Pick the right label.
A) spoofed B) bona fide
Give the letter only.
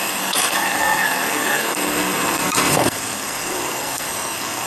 A